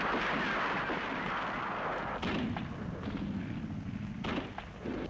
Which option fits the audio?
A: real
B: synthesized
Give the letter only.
A